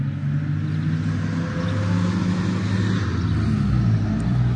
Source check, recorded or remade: recorded